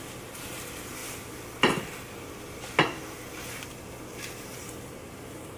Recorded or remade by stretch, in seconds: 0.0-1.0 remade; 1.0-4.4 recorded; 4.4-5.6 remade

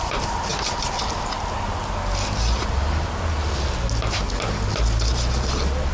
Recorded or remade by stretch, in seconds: 0.0-0.5 recorded; 0.5-1.0 remade; 1.0-5.9 recorded

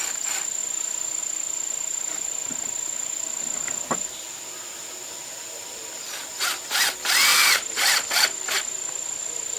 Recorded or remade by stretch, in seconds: 0.0-0.6 recorded; 0.6-1.2 remade; 1.2-7.3 recorded; 7.3-9.6 remade

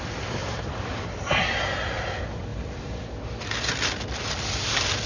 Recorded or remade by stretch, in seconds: 0.0-0.4 recorded; 0.4-1.2 remade; 1.2-5.1 recorded

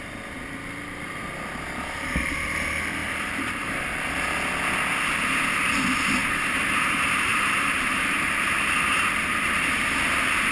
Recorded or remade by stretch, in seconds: 0.0-3.0 recorded; 3.0-4.1 remade; 4.1-6.2 recorded; 6.2-10.0 remade; 10.0-10.5 recorded

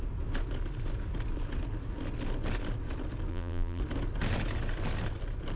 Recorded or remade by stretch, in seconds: 0.0-3.3 recorded; 3.3-3.8 remade; 3.8-5.6 recorded

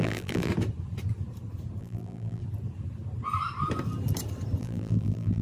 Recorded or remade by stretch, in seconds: 0.0-0.5 remade; 0.5-1.8 recorded; 1.8-2.4 remade; 2.4-4.6 recorded; 4.6-5.4 remade